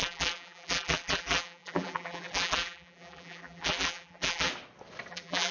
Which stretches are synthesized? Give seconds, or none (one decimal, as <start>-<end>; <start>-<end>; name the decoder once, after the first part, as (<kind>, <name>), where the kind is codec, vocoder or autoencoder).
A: 0.0-4.5 (vocoder, BigVGAN v2); 5.1-5.5